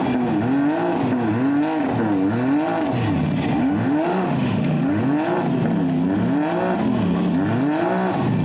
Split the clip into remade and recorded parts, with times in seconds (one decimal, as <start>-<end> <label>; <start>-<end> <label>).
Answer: 0.0-3.6 recorded; 3.6-5.0 remade; 5.0-8.4 recorded